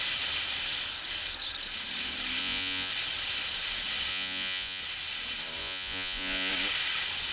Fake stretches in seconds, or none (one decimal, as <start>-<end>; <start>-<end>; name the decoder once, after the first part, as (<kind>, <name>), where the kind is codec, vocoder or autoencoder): 2.4-2.9 (vocoder, Vocos); 4.1-4.8; 5.6-6.5